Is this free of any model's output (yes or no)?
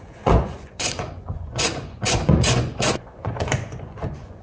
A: no